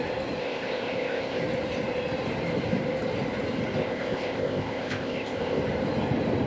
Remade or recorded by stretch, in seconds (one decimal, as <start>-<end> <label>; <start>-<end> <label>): 0.0-0.4 recorded; 0.4-1.4 remade; 1.4-3.8 recorded; 3.8-5.6 remade; 5.6-6.5 recorded